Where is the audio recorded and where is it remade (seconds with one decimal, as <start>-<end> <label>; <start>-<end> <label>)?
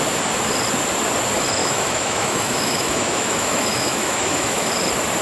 0.0-1.6 recorded; 1.6-4.7 remade; 4.7-5.2 recorded